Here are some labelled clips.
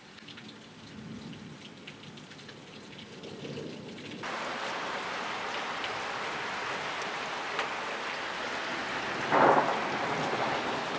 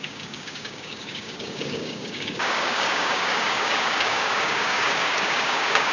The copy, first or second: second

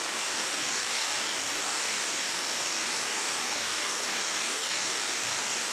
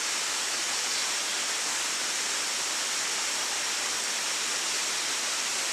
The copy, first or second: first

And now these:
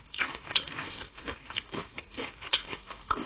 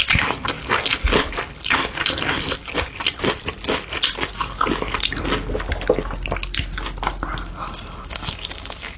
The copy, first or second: first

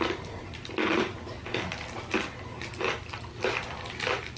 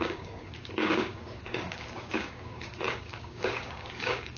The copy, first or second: second